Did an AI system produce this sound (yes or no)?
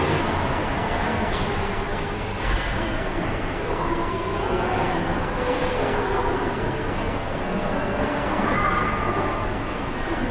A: yes